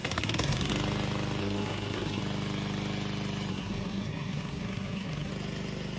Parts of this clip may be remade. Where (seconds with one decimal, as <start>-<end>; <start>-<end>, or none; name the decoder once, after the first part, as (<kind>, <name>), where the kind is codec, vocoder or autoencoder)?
0.0-0.7 (codec, SNAC); 1.4-2.2; 3.5-5.3